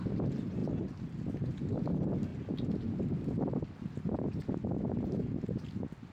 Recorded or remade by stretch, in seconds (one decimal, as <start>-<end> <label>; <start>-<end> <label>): 0.0-6.1 recorded

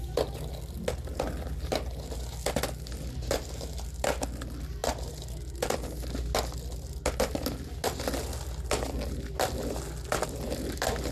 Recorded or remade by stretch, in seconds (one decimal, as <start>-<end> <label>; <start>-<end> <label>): 0.0-11.1 recorded

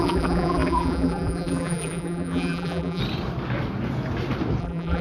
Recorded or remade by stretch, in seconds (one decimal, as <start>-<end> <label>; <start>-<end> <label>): 0.0-3.0 remade; 3.0-4.6 recorded; 4.6-5.0 remade

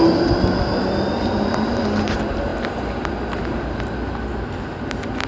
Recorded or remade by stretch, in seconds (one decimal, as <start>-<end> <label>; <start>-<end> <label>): 0.0-5.3 recorded

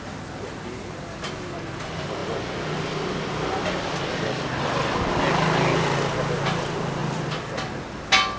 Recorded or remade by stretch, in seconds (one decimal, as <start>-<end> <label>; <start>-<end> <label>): 0.0-8.4 recorded